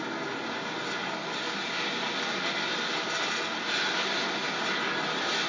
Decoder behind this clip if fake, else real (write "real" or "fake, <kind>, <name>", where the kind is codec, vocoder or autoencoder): real